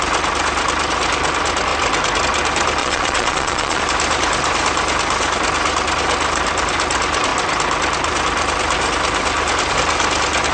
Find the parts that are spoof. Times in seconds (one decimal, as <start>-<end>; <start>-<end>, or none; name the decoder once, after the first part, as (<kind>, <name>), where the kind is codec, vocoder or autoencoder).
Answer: 2.8-3.8 (vocoder, Vocos)